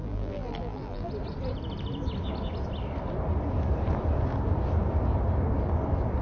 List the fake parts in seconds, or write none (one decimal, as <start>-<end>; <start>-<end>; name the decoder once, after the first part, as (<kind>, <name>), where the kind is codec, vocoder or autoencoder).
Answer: 0.0-1.1 (vocoder, BigVGAN v2)